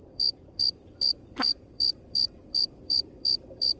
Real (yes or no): no